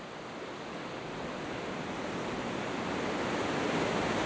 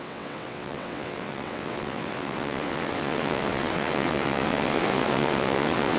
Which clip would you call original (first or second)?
first